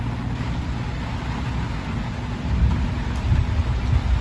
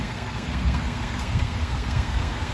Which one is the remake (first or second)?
second